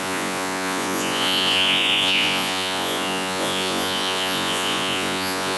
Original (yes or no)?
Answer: no